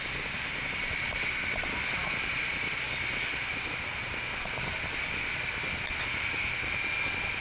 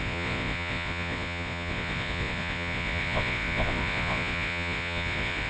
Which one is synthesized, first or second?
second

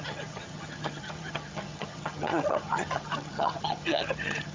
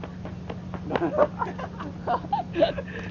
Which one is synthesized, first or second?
first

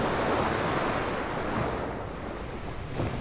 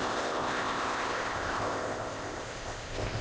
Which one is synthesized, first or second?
second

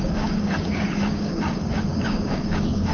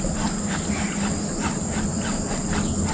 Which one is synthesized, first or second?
first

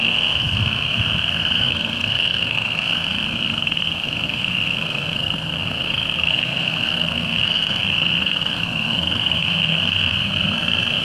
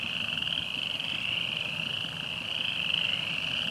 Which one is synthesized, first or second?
first